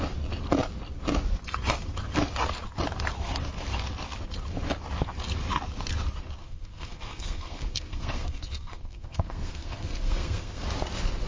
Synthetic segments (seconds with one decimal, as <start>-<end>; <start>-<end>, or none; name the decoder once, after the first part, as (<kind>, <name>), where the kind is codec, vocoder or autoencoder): 6.4-10.6 (codec, SNAC)